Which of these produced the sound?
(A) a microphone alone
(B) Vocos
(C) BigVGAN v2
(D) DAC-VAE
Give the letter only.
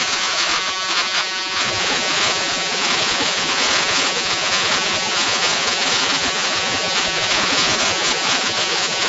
B